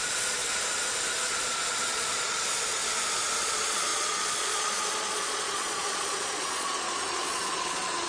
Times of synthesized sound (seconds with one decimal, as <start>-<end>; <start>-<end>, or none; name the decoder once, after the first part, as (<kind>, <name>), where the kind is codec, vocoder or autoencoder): 0.0-0.4 (vocoder, Vocos); 1.3-2.8; 3.4-8.1